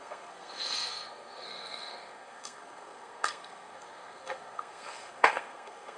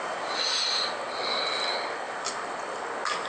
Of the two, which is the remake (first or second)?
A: first